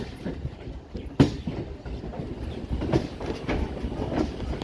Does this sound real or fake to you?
real